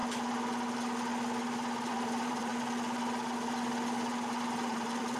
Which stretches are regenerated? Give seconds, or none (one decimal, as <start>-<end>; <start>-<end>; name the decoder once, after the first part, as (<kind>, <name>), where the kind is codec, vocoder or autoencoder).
1.9-2.5 (vocoder, BigVGAN v2); 4.7-5.2